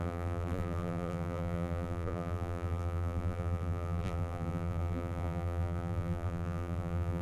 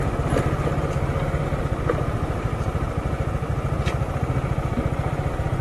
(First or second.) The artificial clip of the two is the first